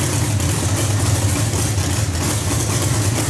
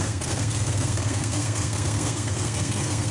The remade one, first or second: second